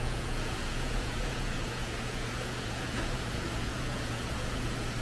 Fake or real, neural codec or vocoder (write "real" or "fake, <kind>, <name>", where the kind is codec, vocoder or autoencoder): fake, vocoder, Vocos